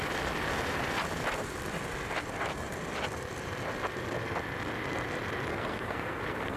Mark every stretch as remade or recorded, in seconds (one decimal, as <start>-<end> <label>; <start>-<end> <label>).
0.0-5.5 recorded; 5.5-6.6 remade